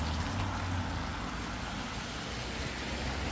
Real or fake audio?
real